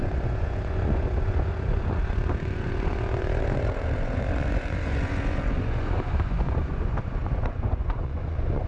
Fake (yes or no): yes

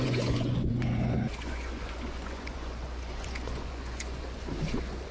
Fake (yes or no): yes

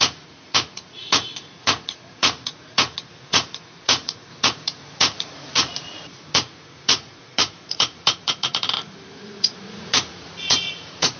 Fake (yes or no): yes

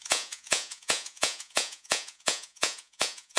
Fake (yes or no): yes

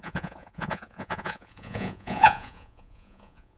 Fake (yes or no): yes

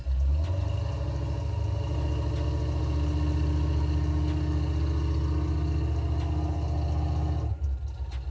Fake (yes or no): no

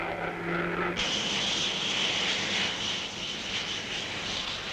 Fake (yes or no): no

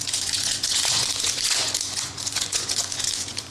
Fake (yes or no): yes